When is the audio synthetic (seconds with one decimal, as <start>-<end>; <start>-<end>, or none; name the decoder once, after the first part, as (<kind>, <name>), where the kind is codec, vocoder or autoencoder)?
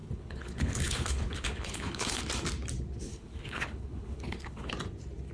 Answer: 0.0-2.2 (codec, HILCodec); 3.1-4.7